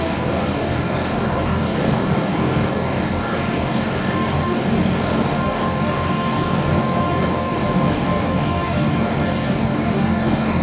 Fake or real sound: fake